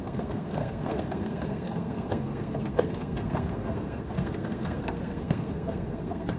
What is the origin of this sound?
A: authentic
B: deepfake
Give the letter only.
B